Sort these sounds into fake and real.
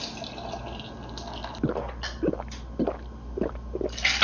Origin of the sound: real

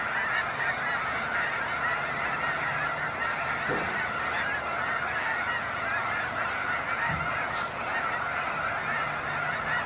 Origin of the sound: real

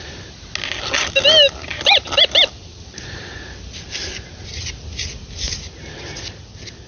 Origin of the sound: real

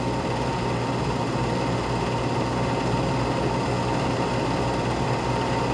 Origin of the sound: real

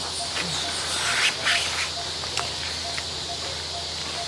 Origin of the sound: real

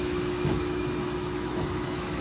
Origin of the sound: fake